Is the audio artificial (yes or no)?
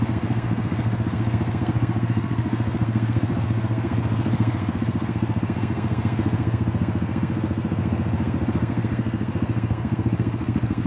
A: yes